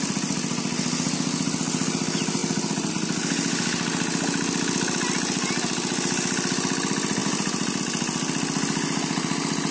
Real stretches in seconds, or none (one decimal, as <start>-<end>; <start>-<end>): 0.0-9.7